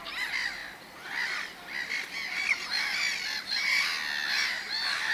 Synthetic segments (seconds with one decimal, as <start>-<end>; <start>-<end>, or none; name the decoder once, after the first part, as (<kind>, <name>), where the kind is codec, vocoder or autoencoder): none